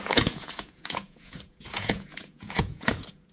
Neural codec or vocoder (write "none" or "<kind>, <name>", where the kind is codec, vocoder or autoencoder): vocoder, Vocos